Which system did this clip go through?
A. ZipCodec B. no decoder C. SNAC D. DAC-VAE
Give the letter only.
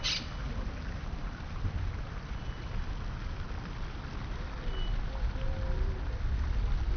B